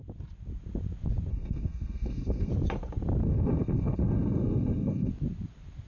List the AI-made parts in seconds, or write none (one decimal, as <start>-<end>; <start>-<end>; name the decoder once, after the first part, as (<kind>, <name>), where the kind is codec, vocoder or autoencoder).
1.3-2.5 (codec, SNAC); 3.2-5.1